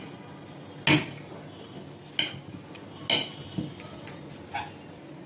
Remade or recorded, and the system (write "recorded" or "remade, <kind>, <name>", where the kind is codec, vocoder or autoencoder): recorded